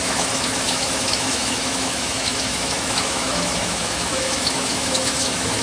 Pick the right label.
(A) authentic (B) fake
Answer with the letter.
B